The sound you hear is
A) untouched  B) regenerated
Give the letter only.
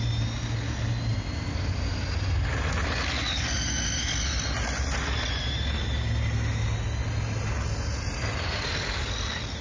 A